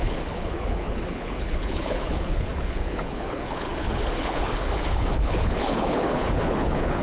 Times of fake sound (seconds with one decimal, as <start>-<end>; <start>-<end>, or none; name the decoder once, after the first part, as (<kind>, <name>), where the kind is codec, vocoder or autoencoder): 0.0-7.0 (codec, HILCodec)

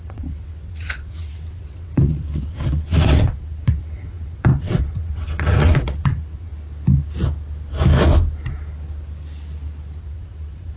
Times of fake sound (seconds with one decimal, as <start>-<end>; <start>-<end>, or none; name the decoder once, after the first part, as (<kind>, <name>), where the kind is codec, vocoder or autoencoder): 0.0-6.5 (vocoder, WaveNeXt); 10.0-10.8

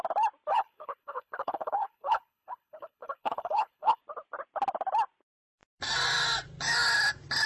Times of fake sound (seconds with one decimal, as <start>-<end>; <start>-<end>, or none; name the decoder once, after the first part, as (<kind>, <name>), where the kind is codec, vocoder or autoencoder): 0.5-4.0 (codec, HILCodec)

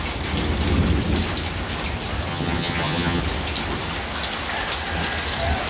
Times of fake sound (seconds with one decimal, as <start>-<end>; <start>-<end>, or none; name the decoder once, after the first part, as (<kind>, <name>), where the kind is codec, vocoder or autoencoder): 2.3-3.2 (vocoder, HiFi-GAN)

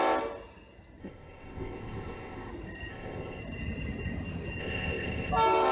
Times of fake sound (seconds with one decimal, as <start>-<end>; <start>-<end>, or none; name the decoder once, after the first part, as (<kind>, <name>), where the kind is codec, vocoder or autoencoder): 1.0-2.5 (codec, ZipCodec); 2.9-3.4; 4.6-5.3

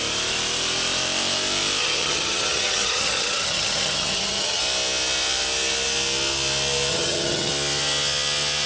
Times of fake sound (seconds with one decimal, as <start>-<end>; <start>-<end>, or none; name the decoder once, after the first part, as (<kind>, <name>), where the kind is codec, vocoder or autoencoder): 1.8-4.6 (vocoder, HiFi-GAN); 6.9-7.5

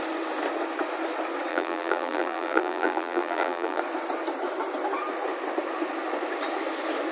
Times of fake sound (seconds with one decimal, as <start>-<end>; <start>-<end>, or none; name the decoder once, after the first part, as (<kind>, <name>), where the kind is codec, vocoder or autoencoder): 1.5-3.8 (vocoder, BigVGAN v2)

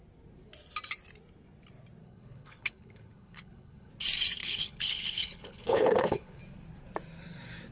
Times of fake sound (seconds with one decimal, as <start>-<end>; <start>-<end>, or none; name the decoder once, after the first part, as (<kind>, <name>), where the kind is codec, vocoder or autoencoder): 2.0-3.9 (codec, HILCodec); 4.4-6.4